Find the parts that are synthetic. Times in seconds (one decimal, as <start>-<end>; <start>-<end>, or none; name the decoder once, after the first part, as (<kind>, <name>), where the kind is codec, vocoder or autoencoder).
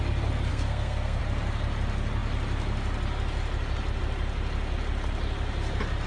0.5-1.2 (codec, SNAC)